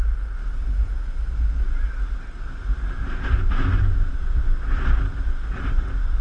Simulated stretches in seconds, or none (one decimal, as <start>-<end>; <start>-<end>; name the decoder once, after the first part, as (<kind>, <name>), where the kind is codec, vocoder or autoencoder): none